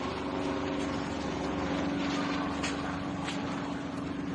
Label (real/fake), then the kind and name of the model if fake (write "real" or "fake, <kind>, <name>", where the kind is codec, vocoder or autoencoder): real